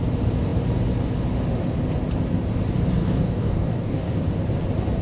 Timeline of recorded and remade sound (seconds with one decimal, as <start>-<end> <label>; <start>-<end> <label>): 0.0-3.0 recorded; 3.0-4.2 remade; 4.2-5.0 recorded